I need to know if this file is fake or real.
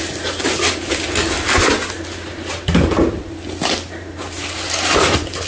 real